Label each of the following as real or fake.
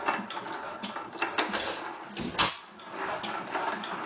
real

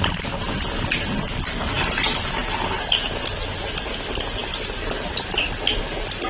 real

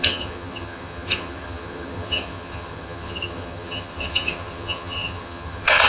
fake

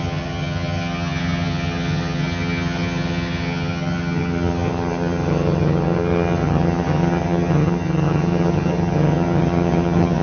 fake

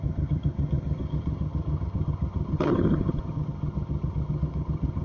fake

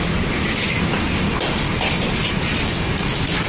real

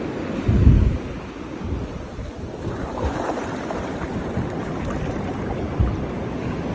real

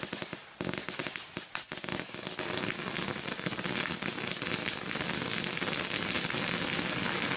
real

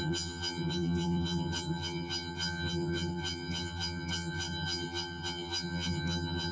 fake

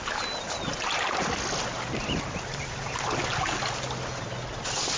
real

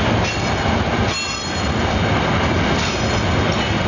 real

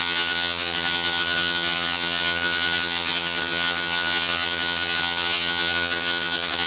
fake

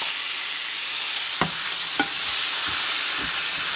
real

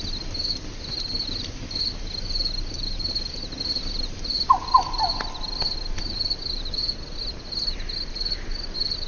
real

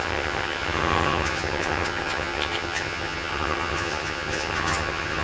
fake